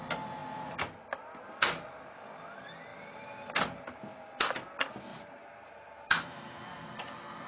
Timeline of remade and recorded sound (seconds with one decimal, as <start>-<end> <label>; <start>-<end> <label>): 0.0-2.9 recorded; 2.9-3.5 remade; 3.5-5.1 recorded; 5.1-6.8 remade; 6.8-7.5 recorded